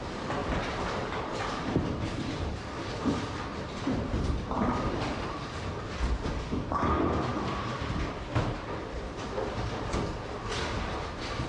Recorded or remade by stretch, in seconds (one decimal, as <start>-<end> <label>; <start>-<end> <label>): 0.0-0.4 recorded; 0.4-5.2 remade; 5.2-7.3 recorded; 7.3-8.0 remade; 8.0-11.5 recorded